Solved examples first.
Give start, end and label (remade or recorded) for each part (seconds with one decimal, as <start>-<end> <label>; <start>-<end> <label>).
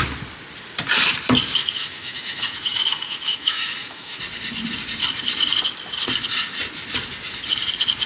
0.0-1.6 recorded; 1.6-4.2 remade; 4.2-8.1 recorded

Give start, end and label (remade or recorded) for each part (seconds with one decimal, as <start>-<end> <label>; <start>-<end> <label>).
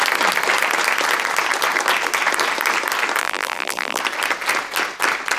0.0-3.2 recorded; 3.2-4.0 remade; 4.0-5.4 recorded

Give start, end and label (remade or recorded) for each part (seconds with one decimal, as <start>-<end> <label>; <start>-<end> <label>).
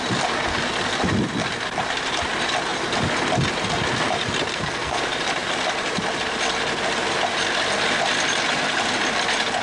0.0-4.5 recorded; 4.5-5.0 remade; 5.0-9.6 recorded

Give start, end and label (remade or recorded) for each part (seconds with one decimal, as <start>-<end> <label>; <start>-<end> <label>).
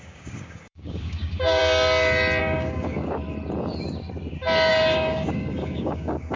0.0-1.6 remade; 1.6-2.4 recorded; 2.4-3.2 remade; 3.2-4.7 recorded; 4.7-6.4 remade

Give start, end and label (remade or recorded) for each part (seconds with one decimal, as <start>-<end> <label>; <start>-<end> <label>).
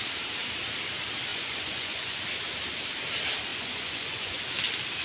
0.0-1.3 recorded; 1.3-2.2 remade; 2.2-3.5 recorded; 3.5-4.4 remade; 4.4-5.0 recorded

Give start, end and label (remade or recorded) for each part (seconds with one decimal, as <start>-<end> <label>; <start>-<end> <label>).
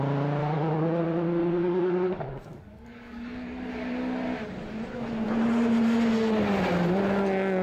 0.0-0.4 recorded; 0.4-1.0 remade; 1.0-1.4 recorded; 1.4-3.7 remade; 3.7-7.6 recorded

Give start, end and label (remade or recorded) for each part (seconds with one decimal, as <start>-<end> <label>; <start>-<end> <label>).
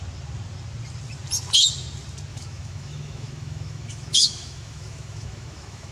0.0-2.3 recorded; 2.3-5.9 remade